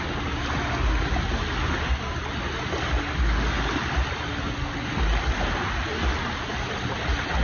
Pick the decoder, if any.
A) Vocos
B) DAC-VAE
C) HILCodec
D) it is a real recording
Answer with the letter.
D